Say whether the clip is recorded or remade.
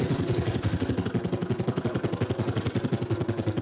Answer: recorded